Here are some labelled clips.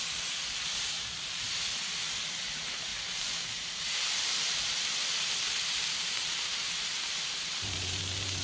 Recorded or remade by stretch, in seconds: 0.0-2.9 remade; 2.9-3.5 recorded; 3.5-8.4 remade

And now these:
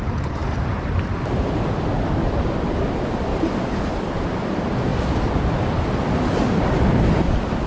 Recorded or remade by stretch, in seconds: 0.0-0.4 recorded; 0.4-1.7 remade; 1.7-7.7 recorded

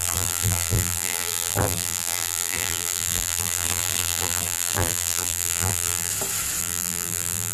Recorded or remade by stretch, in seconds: 0.0-6.1 remade; 6.1-6.6 recorded; 6.6-7.5 remade